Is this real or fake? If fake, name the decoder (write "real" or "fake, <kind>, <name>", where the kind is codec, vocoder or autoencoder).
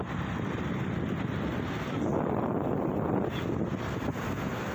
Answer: real